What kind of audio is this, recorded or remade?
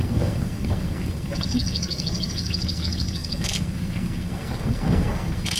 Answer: remade